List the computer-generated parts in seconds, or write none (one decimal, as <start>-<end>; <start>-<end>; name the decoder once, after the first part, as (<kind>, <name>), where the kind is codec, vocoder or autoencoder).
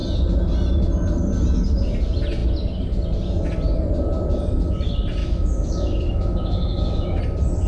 5.2-7.2 (autoencoder, DAC-VAE)